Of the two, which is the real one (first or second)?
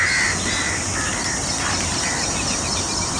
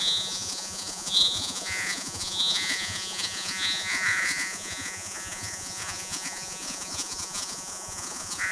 first